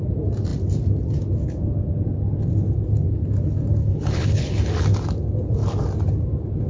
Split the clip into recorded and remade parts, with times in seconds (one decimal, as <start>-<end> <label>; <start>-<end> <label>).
0.0-3.8 recorded; 3.8-4.5 remade; 4.5-6.7 recorded